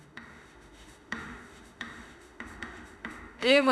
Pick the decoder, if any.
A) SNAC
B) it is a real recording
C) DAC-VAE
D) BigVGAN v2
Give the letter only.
C